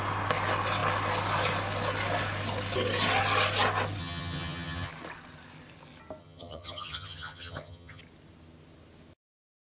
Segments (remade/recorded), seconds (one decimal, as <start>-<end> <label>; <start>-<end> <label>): 0.0-4.0 recorded; 4.0-4.9 remade; 4.9-6.2 recorded; 6.2-8.0 remade; 8.0-9.6 recorded